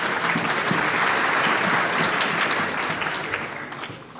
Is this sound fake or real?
real